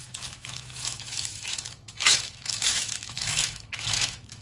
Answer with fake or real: fake